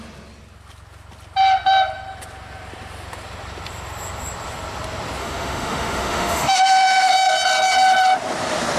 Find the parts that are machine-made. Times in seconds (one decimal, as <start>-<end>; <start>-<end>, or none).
5.2-7.1